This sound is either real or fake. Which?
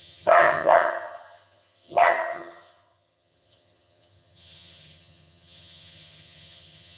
fake